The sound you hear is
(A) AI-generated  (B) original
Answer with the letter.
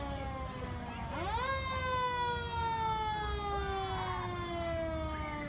B